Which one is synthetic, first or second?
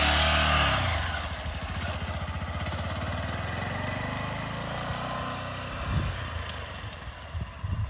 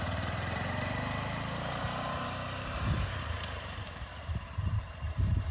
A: second